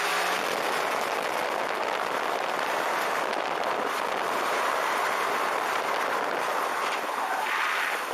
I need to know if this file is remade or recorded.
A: recorded